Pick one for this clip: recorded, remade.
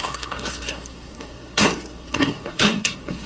remade